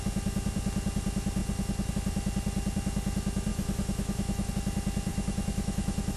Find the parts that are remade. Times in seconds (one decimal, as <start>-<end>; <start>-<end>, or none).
3.5-4.5; 5.1-6.2